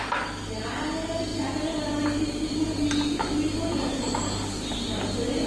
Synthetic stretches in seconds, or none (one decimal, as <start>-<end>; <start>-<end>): none